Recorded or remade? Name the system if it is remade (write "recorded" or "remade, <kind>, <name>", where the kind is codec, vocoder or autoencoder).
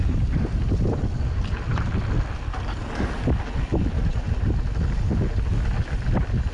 recorded